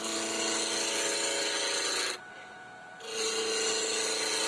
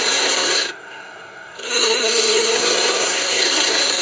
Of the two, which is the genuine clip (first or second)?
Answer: first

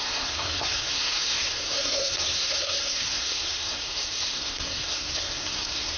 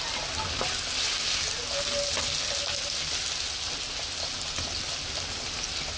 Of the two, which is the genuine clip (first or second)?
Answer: second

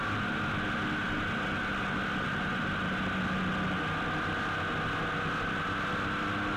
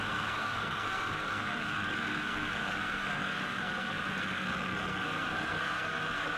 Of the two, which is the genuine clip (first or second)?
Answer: first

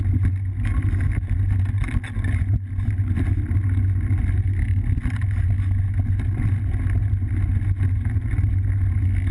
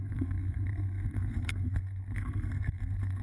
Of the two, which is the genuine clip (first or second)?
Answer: first